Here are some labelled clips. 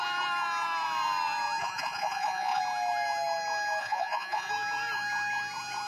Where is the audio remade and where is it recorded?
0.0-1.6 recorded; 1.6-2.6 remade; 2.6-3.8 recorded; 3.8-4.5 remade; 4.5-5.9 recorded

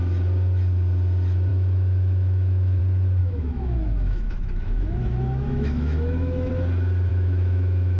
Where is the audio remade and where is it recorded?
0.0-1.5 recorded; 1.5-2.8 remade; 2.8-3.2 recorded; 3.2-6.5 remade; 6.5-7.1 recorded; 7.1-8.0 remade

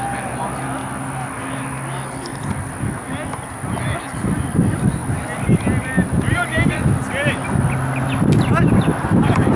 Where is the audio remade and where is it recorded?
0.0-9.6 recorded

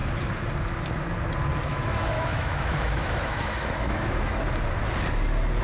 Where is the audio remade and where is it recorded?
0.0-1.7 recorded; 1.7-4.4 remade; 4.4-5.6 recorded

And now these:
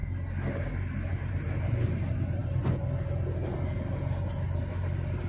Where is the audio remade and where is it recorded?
0.0-5.3 recorded

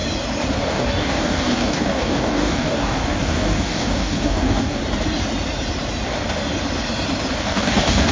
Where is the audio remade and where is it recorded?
0.0-0.6 recorded; 0.6-4.8 remade; 4.8-7.4 recorded; 7.4-8.1 remade